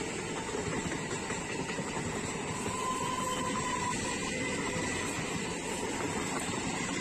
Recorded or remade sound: recorded